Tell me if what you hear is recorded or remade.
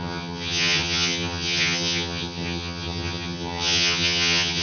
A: remade